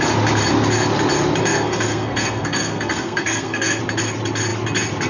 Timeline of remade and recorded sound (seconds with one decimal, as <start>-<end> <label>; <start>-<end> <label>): 0.0-1.4 recorded; 1.4-3.8 remade; 3.8-5.1 recorded